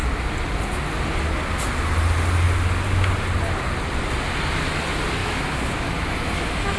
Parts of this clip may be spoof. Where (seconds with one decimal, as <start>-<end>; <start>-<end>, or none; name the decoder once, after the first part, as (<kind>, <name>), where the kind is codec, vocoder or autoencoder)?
5.2-6.8 (autoencoder, DAC-VAE)